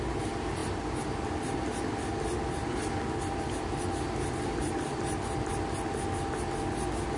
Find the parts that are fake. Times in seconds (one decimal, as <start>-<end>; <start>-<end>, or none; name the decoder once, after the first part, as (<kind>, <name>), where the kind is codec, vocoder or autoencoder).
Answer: none